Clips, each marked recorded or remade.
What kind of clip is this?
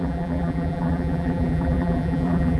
remade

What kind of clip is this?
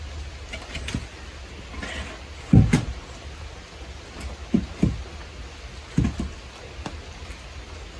recorded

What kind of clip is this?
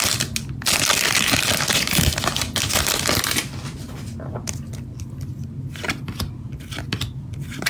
recorded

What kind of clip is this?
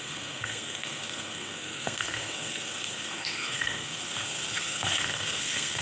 remade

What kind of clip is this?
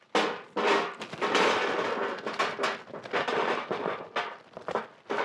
recorded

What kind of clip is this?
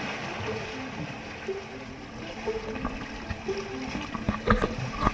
recorded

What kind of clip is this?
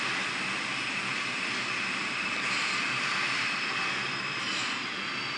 recorded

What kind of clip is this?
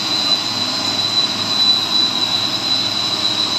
recorded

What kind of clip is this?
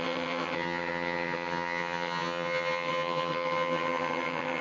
remade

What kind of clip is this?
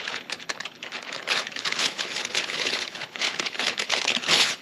remade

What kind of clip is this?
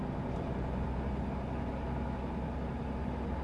recorded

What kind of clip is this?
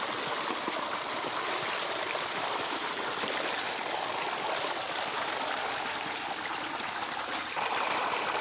remade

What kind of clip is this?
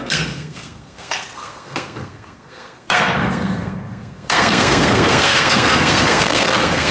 remade